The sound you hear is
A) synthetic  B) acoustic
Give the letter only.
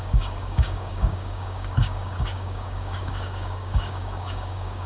A